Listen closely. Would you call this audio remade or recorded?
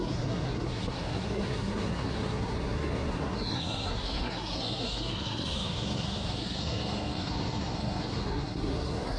remade